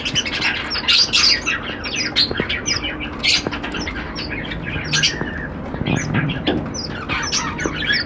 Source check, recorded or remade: recorded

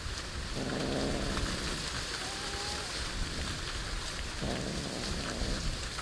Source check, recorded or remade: recorded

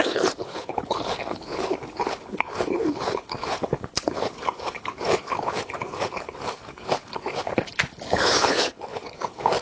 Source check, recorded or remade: remade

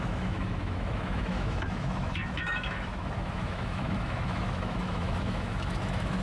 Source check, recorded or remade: remade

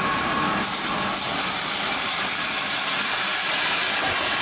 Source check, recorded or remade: remade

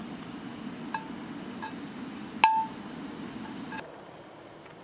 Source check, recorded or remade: recorded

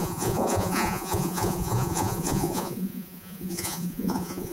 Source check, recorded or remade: remade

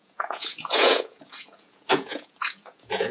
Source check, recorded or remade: remade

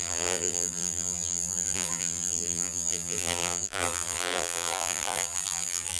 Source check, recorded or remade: remade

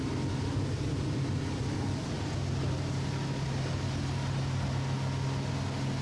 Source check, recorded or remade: recorded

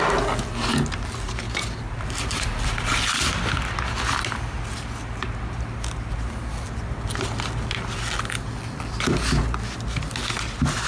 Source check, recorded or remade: recorded